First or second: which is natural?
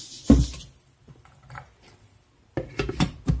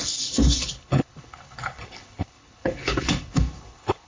first